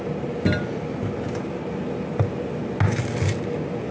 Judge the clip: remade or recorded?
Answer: recorded